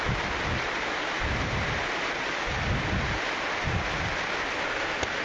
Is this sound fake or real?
real